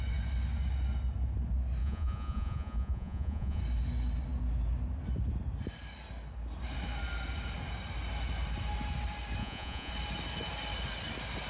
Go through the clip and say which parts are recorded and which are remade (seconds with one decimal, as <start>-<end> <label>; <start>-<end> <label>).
0.0-1.8 recorded; 1.8-3.6 remade; 3.6-9.4 recorded; 9.4-9.9 remade; 9.9-11.5 recorded